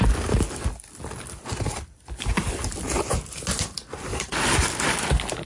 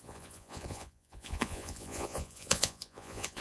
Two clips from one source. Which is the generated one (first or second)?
second